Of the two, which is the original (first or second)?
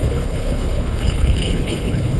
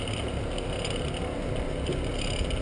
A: second